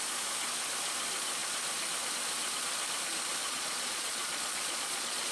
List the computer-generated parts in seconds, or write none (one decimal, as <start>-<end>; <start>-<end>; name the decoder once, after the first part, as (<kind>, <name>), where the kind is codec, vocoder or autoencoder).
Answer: 3.4-5.3 (vocoder, Vocos)